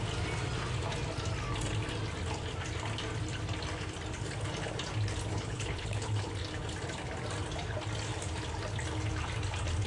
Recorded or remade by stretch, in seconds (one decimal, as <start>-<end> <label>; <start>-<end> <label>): 0.0-5.3 recorded; 5.3-6.3 remade; 6.3-9.9 recorded